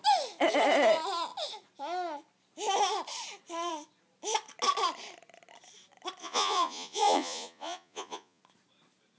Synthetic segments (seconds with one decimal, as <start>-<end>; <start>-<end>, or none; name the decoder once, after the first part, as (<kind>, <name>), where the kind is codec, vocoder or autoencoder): 6.2-8.4 (vocoder, Vocos)